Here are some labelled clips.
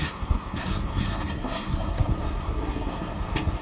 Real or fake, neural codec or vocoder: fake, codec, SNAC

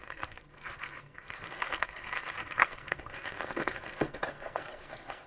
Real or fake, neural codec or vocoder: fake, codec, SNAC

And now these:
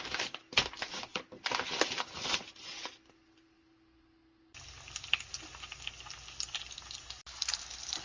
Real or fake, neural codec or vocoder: real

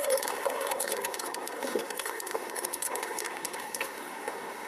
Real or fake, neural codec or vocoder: fake, codec, SNAC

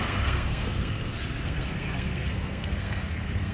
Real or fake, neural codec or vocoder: fake, codec, SNAC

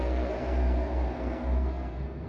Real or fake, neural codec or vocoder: fake, codec, SNAC